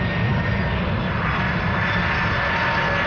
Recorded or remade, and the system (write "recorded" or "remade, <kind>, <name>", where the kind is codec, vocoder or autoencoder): recorded